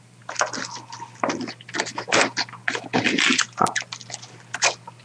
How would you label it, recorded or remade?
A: recorded